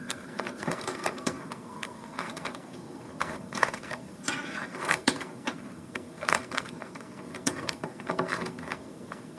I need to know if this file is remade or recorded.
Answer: remade